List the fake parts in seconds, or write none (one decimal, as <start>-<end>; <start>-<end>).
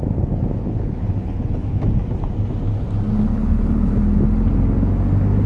0.6-1.8; 3.3-4.0